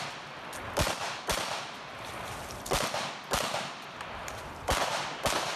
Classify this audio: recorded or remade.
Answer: recorded